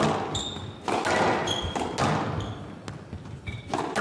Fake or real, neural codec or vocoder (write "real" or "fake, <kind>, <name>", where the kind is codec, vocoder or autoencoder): real